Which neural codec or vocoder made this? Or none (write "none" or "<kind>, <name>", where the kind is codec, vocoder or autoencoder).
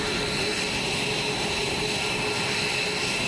none